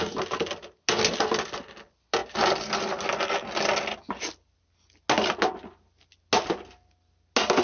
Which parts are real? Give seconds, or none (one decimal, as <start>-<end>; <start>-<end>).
0.0-7.6